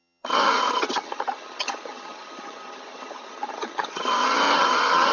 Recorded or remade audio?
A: remade